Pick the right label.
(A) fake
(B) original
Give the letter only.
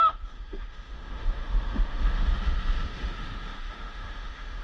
A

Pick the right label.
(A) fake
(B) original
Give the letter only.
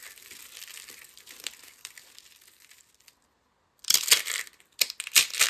B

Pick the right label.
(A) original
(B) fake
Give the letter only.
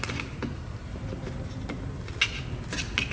A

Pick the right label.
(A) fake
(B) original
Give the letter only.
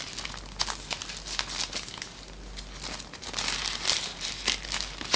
B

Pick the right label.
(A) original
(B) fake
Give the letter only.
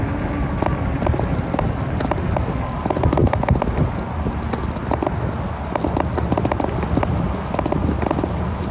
A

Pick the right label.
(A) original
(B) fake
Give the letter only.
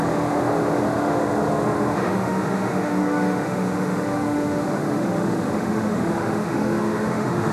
B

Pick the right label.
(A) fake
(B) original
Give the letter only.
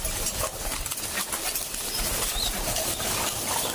B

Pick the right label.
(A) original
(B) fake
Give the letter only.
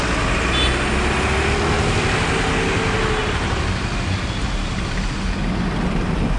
A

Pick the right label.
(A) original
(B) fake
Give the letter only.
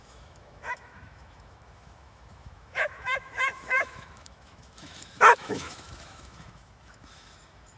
B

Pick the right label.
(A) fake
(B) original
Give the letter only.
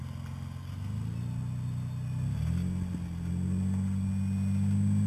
B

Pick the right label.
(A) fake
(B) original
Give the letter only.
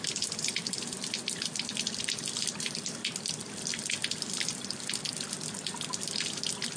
B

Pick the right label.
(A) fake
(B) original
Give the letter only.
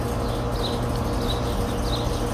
B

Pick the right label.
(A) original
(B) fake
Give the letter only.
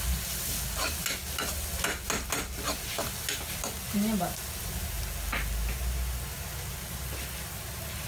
A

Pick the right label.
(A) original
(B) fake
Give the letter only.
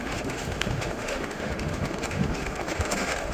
B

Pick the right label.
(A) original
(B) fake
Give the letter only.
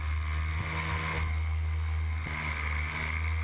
A